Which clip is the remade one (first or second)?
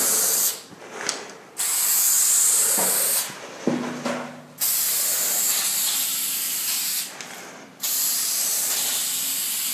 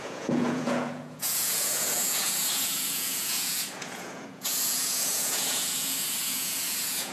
second